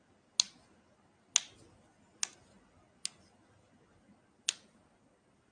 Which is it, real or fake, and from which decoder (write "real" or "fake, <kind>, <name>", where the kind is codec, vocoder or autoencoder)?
real